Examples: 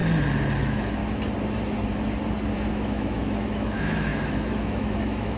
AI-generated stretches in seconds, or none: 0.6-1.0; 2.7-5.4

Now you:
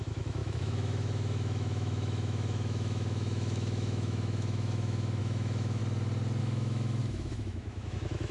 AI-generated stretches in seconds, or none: 0.0-5.8; 6.4-8.3

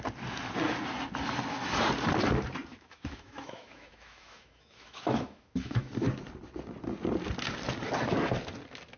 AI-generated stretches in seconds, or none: 2.7-5.9

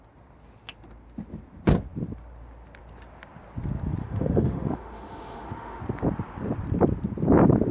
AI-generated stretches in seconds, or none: 4.0-5.8

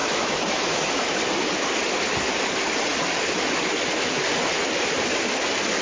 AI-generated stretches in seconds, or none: 0.0-1.1

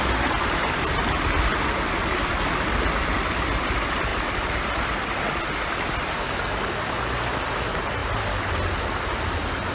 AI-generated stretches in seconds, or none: none

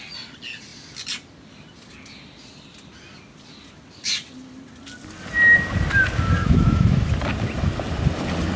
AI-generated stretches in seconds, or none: 6.4-7.1